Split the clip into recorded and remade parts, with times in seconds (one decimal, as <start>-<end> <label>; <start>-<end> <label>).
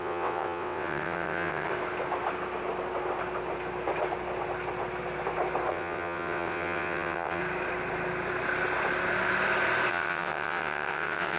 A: 0.0-1.7 remade; 1.7-5.7 recorded; 5.7-7.4 remade; 7.4-9.9 recorded; 9.9-11.4 remade